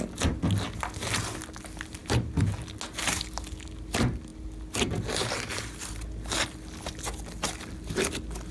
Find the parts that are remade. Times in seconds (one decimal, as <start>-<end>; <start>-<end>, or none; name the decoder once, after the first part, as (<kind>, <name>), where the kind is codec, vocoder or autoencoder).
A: none